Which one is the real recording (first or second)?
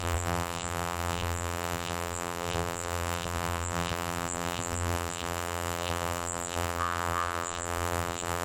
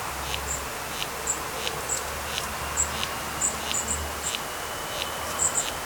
second